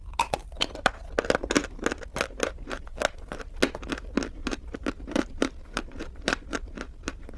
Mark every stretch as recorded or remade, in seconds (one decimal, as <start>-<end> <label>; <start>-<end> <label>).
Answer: 0.0-0.4 recorded; 0.4-1.0 remade; 1.0-2.1 recorded; 2.1-2.8 remade; 2.8-4.4 recorded; 4.4-7.4 remade